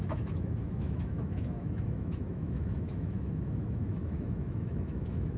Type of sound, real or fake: fake